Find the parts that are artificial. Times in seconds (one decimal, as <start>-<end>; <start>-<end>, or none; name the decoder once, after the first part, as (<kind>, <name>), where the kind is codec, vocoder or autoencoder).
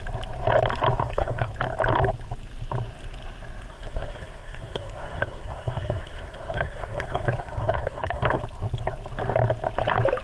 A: 1.0-1.5 (codec, SNAC); 3.7-8.4